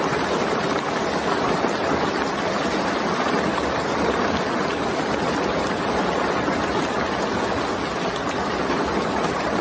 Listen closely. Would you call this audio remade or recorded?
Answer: recorded